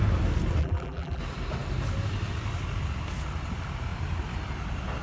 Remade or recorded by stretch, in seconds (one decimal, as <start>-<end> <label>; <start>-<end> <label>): 0.0-0.6 recorded; 0.6-1.2 remade; 1.2-5.0 recorded